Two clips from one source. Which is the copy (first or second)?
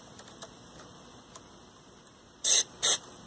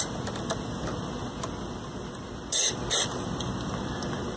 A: first